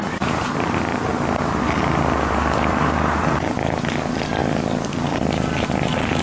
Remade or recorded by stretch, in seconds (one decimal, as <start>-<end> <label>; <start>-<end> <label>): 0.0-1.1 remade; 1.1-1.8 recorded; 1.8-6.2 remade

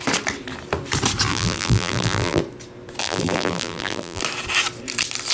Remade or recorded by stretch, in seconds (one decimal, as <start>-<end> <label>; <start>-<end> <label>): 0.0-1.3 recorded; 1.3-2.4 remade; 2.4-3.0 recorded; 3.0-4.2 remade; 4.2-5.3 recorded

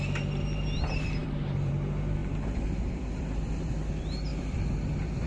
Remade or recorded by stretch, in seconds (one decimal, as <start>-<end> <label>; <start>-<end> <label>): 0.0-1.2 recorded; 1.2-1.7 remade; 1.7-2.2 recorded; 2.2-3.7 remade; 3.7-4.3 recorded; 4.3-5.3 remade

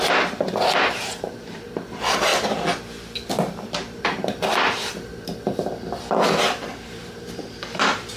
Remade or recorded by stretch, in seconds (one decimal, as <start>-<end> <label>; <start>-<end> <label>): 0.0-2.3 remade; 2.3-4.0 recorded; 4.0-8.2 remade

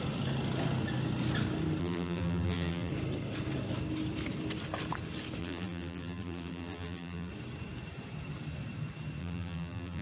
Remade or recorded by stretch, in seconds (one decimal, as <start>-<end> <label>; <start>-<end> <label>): 0.0-1.8 recorded; 1.8-2.9 remade; 2.9-5.4 recorded; 5.4-7.3 remade; 7.3-9.2 recorded; 9.2-10.0 remade

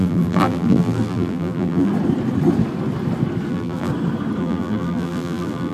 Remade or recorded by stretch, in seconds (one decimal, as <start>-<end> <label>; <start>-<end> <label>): 0.0-1.9 remade; 1.9-3.5 recorded; 3.5-3.9 remade; 3.9-4.4 recorded; 4.4-5.7 remade